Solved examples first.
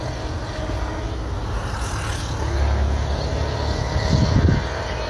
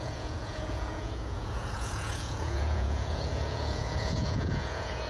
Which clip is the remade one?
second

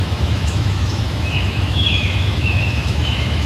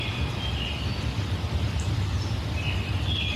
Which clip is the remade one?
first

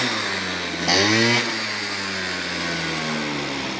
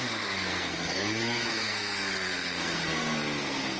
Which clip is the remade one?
second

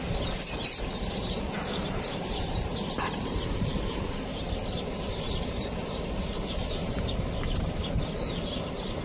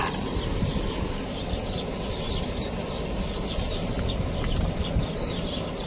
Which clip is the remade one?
first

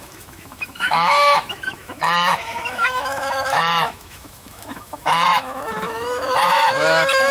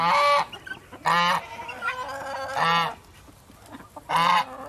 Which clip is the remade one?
first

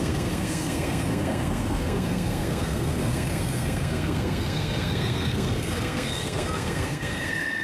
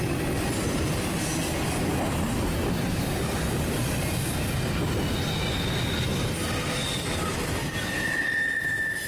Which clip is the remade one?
first